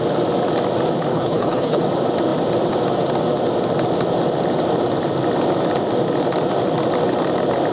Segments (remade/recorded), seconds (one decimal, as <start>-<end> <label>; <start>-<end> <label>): 0.0-1.1 recorded; 1.1-1.8 remade; 1.8-7.7 recorded